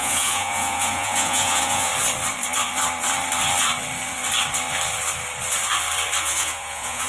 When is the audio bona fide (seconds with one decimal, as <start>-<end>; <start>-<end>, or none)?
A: 1.9-6.2